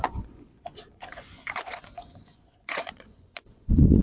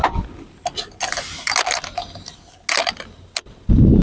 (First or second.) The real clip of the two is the second